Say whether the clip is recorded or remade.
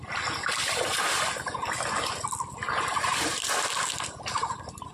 recorded